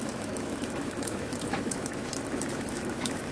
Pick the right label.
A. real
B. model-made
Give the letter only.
B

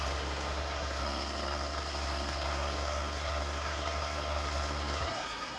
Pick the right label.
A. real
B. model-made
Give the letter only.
B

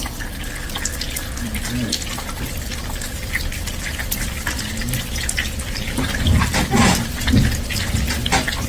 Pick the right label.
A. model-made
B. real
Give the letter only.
B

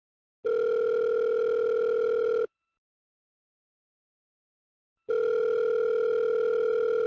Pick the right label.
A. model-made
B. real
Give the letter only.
B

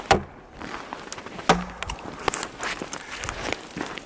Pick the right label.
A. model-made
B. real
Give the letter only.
B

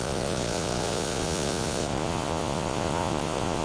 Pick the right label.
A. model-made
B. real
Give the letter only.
A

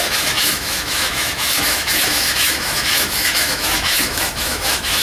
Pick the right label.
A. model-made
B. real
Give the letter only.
A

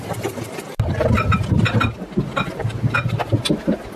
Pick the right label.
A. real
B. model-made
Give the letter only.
A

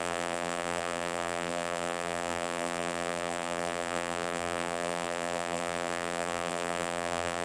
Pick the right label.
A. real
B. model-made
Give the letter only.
B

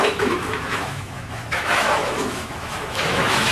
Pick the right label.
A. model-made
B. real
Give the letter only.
A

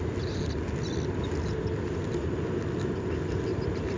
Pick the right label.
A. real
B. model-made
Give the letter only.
A